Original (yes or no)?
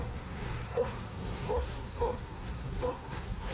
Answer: no